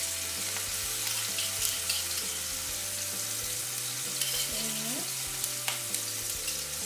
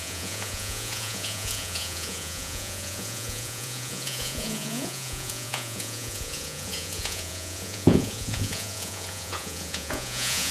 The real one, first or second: first